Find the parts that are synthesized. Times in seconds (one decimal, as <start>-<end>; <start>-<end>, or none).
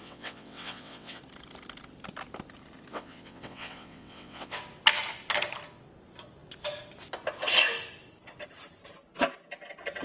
0.0-1.2; 2.9-4.6